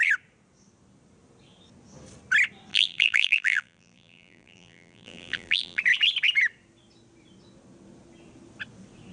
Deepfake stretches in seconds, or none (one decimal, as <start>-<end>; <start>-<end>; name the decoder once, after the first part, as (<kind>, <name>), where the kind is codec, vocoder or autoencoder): 2.7-5.8 (vocoder, BigVGAN v2)